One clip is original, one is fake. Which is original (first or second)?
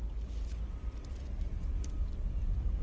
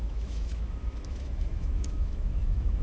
first